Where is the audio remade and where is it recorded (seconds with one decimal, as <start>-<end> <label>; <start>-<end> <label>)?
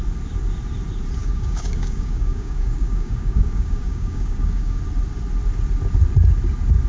0.0-1.2 recorded; 1.2-4.8 remade; 4.8-6.9 recorded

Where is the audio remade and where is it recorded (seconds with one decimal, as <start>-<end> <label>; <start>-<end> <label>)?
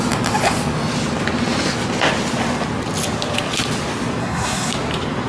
0.0-4.2 recorded; 4.2-4.7 remade; 4.7-5.3 recorded